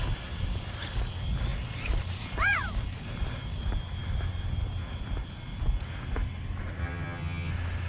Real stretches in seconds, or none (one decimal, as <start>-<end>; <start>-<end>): 0.0-6.8; 7.5-7.9